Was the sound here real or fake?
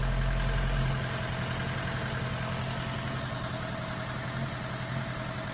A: real